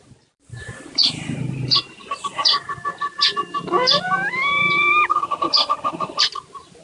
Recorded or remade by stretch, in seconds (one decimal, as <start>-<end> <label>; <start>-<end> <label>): 0.0-6.8 remade